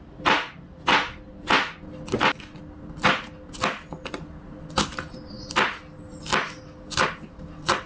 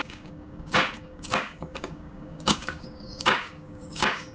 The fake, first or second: second